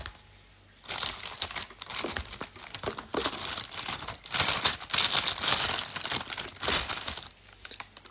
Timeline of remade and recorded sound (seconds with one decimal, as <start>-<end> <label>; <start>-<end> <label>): 0.0-8.1 recorded